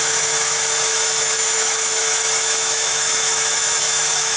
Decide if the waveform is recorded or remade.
remade